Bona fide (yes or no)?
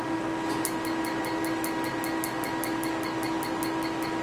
yes